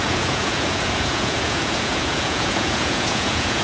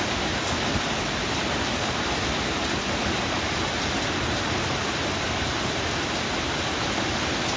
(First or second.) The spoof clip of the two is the first